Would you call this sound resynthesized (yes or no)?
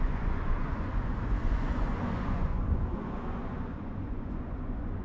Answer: yes